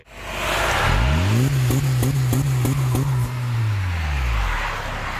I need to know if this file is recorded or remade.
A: recorded